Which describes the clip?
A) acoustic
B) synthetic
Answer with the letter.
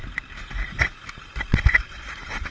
A